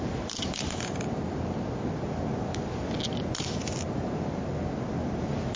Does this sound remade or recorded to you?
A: recorded